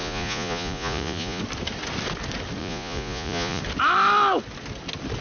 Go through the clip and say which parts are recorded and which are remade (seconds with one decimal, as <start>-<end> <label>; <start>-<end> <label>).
0.0-1.4 remade; 1.4-2.6 recorded; 2.6-3.6 remade; 3.6-5.2 recorded